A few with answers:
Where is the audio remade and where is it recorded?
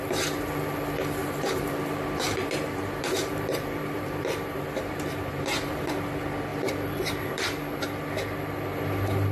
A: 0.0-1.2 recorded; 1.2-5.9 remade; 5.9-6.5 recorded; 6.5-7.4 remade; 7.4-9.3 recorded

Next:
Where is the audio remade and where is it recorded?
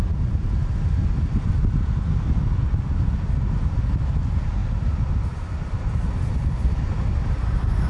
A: 0.0-7.9 recorded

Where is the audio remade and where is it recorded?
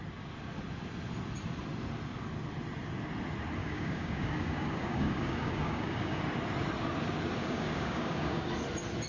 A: 0.0-3.6 recorded; 3.6-6.2 remade; 6.2-7.4 recorded; 7.4-8.5 remade; 8.5-9.1 recorded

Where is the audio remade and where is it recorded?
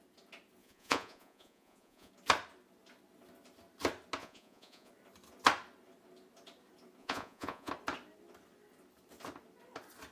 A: 0.0-0.6 recorded; 0.6-2.1 remade; 2.1-4.2 recorded; 4.2-4.9 remade; 4.9-7.0 recorded; 7.0-7.7 remade; 7.7-10.1 recorded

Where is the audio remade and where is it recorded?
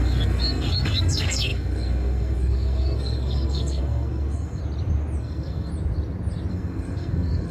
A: 0.0-4.6 remade; 4.6-5.2 recorded; 5.2-5.7 remade; 5.7-6.5 recorded; 6.5-7.5 remade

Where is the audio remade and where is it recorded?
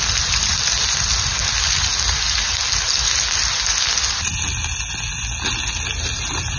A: 0.0-6.6 recorded